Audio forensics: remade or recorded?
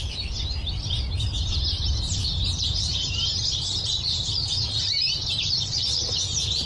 remade